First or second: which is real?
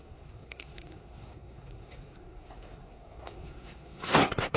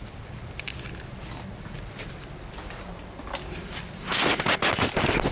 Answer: second